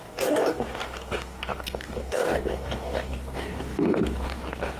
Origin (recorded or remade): remade